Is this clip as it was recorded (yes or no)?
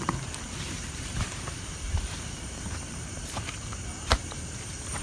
no